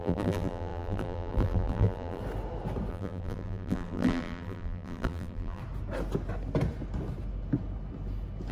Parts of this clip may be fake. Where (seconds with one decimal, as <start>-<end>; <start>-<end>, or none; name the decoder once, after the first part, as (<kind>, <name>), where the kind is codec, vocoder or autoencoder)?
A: 0.0-2.2 (vocoder, BigVGAN v2); 2.9-5.6